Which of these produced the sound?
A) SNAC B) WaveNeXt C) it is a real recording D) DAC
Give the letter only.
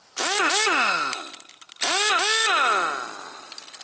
C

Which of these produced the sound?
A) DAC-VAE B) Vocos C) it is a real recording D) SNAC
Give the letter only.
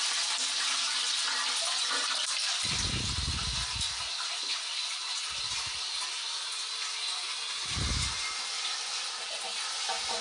C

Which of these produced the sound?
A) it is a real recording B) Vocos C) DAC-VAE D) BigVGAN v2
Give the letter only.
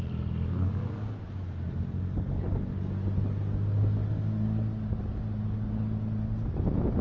A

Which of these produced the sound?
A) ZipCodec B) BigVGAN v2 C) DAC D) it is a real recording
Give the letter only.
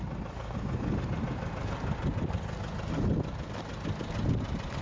D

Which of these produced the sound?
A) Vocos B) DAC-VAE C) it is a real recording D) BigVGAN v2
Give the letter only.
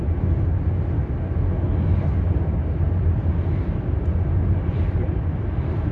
C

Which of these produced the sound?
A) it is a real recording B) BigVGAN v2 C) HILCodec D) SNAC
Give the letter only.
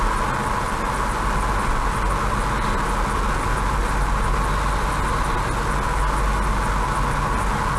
A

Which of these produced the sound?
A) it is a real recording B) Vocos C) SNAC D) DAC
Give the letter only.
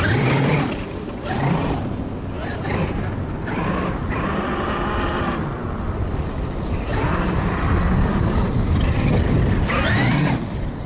A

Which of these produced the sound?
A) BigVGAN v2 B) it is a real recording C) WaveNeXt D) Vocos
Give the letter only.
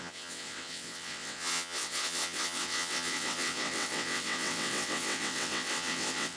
C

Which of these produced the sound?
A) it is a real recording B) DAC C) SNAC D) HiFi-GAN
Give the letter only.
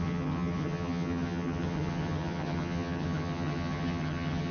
D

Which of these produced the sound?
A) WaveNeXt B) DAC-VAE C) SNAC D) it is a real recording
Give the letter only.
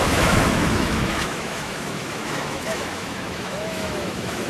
B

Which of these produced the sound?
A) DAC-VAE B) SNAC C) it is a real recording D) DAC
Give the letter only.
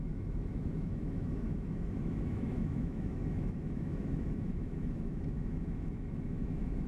A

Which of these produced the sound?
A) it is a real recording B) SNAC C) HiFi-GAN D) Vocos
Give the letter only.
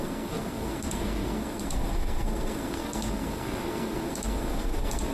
B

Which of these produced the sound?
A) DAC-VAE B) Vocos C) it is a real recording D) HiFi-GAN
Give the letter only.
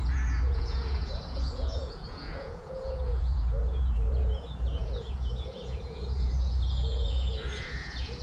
B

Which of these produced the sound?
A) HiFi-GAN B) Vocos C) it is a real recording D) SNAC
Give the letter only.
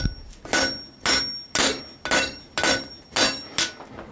C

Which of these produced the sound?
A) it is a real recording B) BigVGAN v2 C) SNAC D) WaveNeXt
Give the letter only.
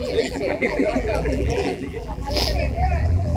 B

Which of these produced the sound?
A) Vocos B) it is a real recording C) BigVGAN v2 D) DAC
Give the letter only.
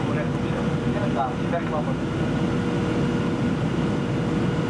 B